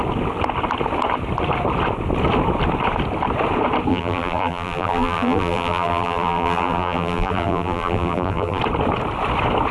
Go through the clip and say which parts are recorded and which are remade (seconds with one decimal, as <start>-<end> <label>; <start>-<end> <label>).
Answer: 0.0-3.9 recorded; 3.9-8.6 remade; 8.6-9.7 recorded